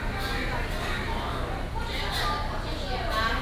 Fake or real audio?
real